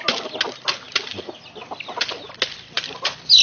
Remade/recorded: recorded